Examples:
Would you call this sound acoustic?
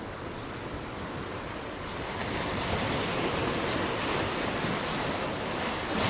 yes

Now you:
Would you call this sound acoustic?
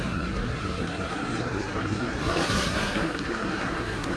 no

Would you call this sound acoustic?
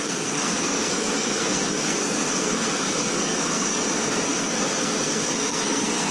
no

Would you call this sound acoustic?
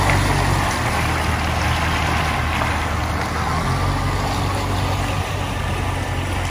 yes